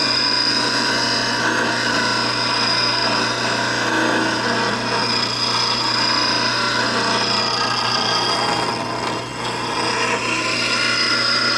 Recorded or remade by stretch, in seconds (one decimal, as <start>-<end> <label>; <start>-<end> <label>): 0.0-1.4 remade; 1.4-11.6 recorded